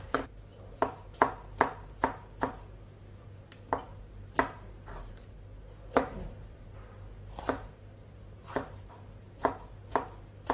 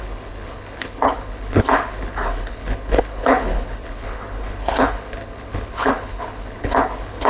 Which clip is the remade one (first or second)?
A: second